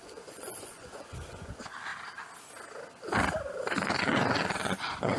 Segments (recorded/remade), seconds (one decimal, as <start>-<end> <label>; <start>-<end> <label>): 0.0-1.9 remade; 1.9-4.0 recorded; 4.0-5.2 remade